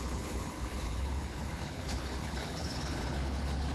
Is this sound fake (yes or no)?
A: yes